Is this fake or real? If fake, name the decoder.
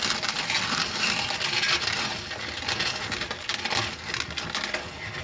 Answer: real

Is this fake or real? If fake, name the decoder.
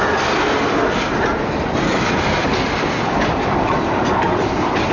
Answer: real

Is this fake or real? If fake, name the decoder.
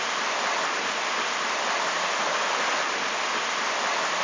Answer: real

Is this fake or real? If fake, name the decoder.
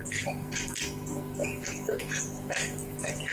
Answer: fake, codec, SNAC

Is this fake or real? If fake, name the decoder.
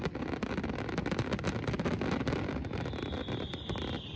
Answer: real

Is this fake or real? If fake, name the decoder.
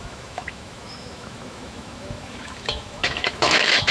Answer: fake, autoencoder, DAC-VAE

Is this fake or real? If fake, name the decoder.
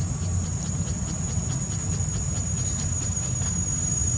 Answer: real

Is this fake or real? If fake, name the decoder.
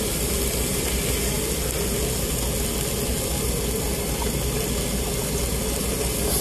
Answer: real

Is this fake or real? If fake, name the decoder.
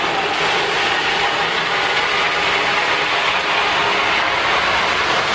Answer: real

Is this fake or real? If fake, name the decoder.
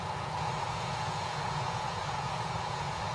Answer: fake, vocoder, Vocos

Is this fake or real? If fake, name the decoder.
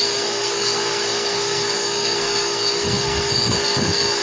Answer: fake, codec, SNAC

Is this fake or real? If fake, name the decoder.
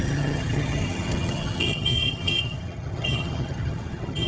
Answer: fake, vocoder, HiFi-GAN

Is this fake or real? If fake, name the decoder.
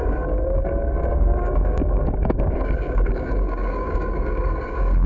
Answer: fake, codec, DAC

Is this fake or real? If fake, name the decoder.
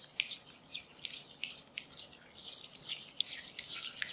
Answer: real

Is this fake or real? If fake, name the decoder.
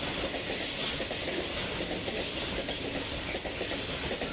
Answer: real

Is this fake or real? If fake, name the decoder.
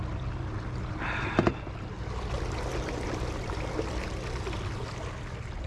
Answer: real